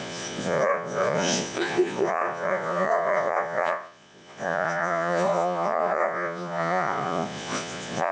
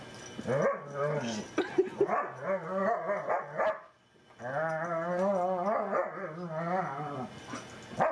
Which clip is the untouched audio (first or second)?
second